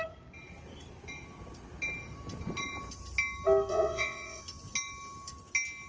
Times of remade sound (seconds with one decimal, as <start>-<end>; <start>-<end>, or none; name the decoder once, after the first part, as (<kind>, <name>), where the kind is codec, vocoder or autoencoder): 3.7-4.4 (vocoder, WaveNeXt)